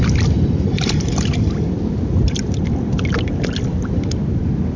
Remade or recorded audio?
recorded